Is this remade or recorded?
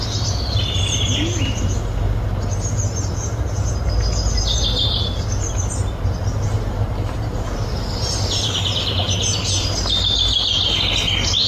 recorded